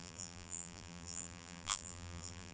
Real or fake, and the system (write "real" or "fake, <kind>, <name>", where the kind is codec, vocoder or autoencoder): fake, vocoder, BigVGAN v2